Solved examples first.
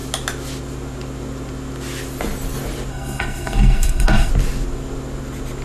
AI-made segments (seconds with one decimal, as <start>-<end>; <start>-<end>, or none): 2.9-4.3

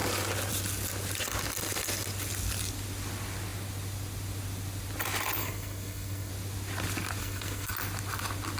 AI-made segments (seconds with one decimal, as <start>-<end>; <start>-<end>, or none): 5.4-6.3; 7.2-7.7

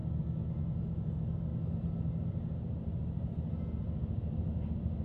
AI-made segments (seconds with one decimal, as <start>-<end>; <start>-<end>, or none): none

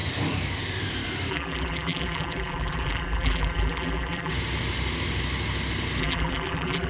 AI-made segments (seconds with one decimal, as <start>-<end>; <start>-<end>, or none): 1.3-4.3; 6.0-6.9

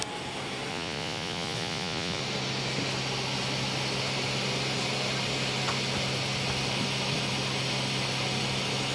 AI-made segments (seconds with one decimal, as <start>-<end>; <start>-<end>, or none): 0.7-2.2

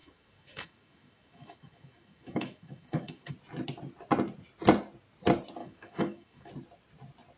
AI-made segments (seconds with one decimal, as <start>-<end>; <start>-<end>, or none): 0.0-3.3; 5.6-6.5

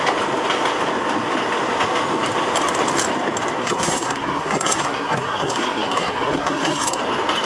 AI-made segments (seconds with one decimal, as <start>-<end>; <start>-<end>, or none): 3.6-7.0

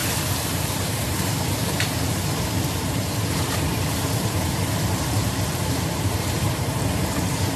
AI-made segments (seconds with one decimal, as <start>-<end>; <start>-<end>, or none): 0.5-7.6